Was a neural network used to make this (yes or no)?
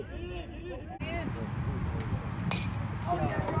no